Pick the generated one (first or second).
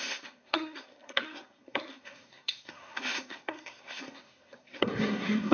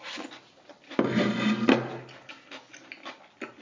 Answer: first